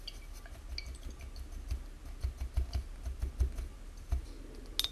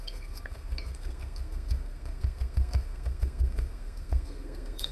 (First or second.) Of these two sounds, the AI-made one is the second